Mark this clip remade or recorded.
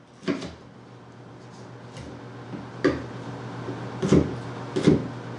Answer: recorded